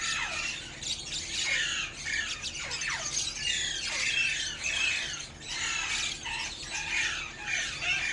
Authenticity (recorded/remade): recorded